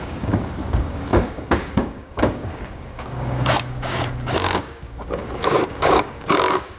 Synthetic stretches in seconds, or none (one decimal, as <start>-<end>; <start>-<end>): 0.0-6.8